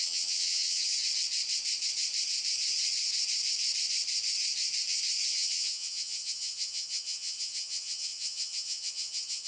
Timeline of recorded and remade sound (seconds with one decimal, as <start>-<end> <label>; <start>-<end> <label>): 0.0-0.9 remade; 0.9-5.3 recorded; 5.3-9.5 remade